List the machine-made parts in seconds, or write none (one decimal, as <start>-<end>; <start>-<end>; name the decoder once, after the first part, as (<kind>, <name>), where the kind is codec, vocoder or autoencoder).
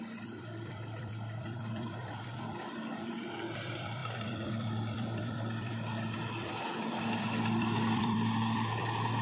0.0-9.2 (vocoder, BigVGAN v2)